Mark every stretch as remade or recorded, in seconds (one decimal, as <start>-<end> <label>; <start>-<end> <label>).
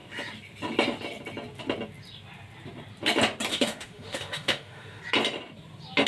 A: 0.0-3.5 recorded; 3.5-5.0 remade; 5.0-6.1 recorded